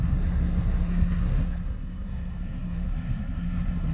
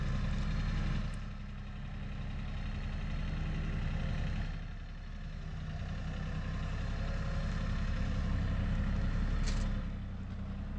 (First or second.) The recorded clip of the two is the second